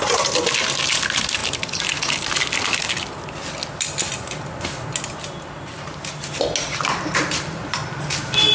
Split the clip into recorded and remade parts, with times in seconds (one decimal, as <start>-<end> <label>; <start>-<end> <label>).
0.0-8.5 recorded